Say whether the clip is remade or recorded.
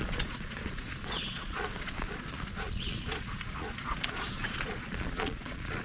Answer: remade